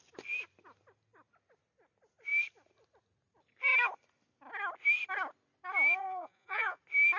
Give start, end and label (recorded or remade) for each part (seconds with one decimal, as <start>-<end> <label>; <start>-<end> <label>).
0.0-6.0 recorded; 6.0-6.8 remade; 6.8-7.2 recorded